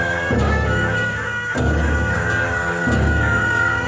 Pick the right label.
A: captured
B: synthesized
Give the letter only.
B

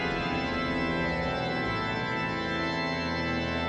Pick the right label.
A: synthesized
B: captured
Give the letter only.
B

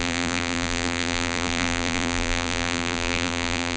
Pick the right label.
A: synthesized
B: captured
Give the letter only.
A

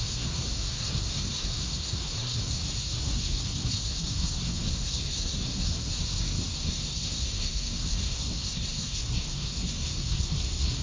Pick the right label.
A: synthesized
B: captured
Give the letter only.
A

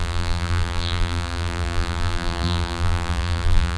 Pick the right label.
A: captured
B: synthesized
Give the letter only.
B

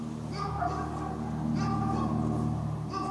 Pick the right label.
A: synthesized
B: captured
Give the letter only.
B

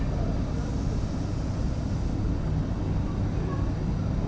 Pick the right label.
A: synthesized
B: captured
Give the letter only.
B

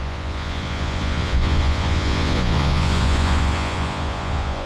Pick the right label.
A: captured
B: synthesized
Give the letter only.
B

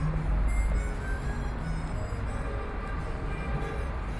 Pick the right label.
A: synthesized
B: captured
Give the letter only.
B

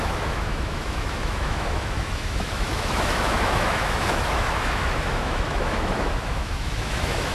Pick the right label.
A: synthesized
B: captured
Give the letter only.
A